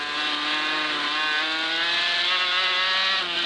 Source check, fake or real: real